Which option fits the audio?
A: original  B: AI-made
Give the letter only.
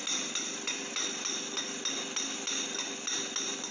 A